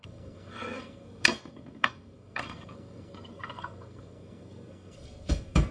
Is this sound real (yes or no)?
no